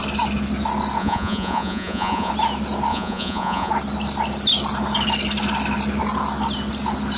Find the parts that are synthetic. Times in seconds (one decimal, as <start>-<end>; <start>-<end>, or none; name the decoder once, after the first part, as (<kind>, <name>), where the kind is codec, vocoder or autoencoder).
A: 1.0-2.3 (vocoder, Vocos); 2.9-3.7